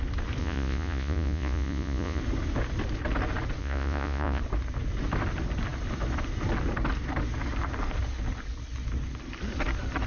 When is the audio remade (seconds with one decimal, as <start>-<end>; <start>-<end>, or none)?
0.4-2.2; 3.6-4.4